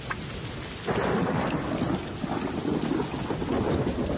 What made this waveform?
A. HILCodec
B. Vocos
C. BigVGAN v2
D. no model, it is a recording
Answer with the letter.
D